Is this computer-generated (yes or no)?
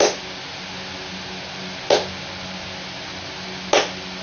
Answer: no